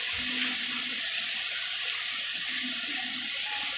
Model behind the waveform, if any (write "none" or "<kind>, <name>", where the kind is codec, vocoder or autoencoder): none